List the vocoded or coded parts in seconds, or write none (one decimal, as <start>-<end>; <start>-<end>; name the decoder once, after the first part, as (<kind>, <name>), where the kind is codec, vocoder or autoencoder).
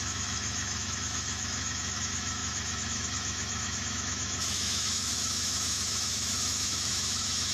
0.0-7.5 (autoencoder, DAC-VAE)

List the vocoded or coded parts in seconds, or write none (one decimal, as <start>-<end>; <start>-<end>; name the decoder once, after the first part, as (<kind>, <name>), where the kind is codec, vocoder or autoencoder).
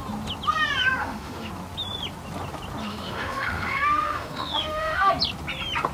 1.0-1.5 (autoencoder, DAC-VAE); 2.8-5.1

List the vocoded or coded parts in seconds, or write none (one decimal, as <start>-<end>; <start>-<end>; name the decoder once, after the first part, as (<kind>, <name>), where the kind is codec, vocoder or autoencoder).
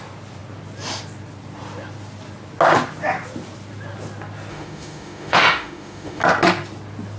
4.5-6.2 (autoencoder, DAC-VAE)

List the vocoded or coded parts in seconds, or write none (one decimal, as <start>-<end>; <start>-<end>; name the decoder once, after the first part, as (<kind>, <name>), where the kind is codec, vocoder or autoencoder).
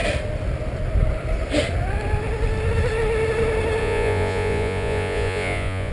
3.8-5.9 (vocoder, Vocos)